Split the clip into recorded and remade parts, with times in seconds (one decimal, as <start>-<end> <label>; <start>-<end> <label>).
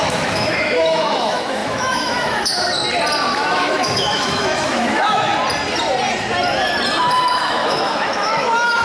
0.0-2.5 remade; 2.5-3.3 recorded; 3.3-5.3 remade; 5.3-7.3 recorded; 7.3-8.8 remade